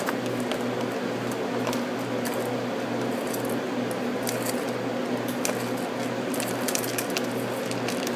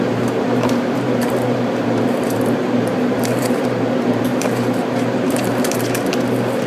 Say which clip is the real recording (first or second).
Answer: first